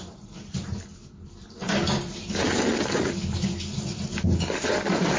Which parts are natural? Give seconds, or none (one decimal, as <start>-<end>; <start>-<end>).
0.0-5.2